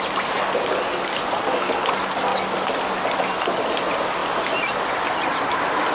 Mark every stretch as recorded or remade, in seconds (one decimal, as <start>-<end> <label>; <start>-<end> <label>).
0.0-5.9 recorded